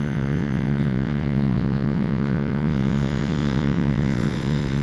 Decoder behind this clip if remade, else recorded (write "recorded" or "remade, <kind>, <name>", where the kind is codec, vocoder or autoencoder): remade, vocoder, WaveNeXt